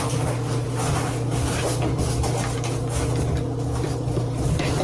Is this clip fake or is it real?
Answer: real